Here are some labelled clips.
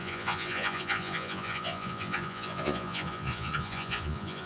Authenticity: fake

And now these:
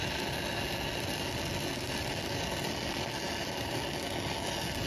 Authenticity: real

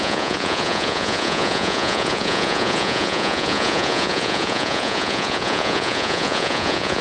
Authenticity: fake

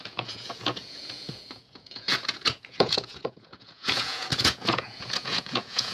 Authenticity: fake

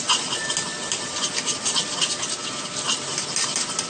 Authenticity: real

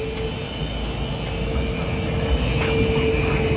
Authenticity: real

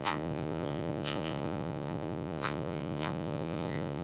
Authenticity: fake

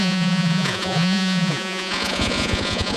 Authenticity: fake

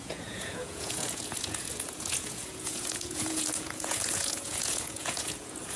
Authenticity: fake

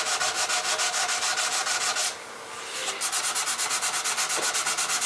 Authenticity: real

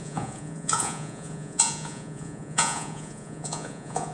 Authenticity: fake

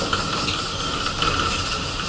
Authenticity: real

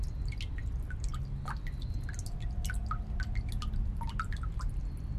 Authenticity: real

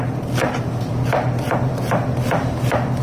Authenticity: real